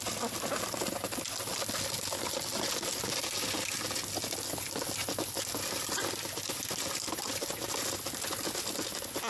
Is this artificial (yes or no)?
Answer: no